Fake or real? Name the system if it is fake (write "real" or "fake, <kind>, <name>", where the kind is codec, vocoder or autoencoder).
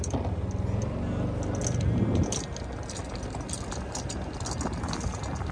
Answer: real